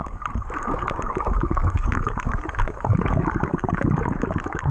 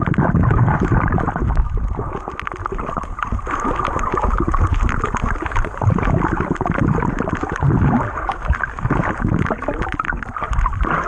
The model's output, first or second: first